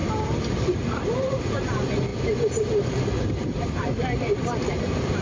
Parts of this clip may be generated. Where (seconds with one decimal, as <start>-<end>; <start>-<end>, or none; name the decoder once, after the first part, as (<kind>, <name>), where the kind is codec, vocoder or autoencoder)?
0.0-1.6 (vocoder, BigVGAN v2); 2.1-5.2